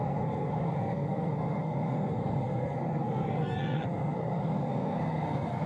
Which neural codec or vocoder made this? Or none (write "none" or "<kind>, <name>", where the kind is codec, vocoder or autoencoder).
codec, SNAC